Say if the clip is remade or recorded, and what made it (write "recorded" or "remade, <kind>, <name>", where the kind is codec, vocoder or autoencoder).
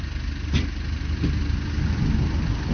recorded